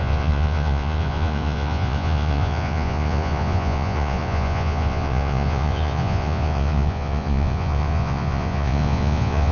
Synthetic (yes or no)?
yes